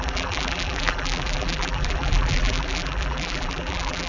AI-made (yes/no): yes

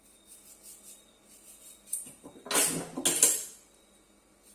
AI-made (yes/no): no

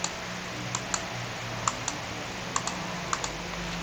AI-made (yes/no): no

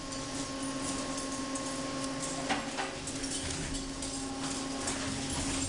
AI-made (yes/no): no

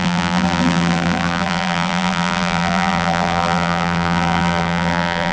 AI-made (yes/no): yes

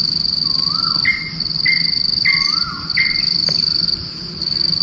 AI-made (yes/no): no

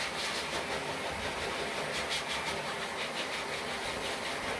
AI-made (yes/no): no